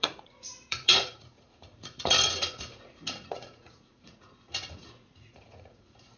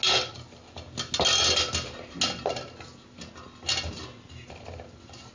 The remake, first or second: first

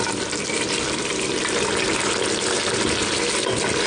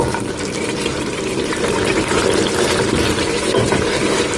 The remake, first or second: second